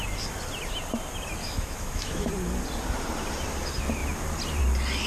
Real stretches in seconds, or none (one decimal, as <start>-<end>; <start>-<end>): 0.0-1.4; 2.3-5.1